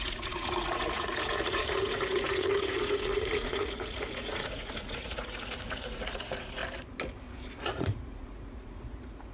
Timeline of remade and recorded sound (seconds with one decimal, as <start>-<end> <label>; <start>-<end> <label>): 0.0-6.6 remade; 6.6-7.6 recorded; 7.6-9.3 remade